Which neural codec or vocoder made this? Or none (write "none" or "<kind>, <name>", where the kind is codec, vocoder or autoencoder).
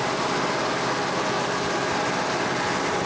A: none